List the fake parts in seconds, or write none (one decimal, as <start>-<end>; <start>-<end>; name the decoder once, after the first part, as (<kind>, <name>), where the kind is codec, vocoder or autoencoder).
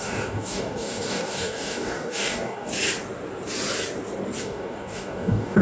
0.0-2.7 (codec, DAC); 4.4-5.6